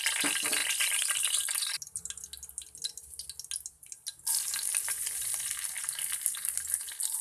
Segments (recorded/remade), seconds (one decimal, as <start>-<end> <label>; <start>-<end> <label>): 0.0-7.2 recorded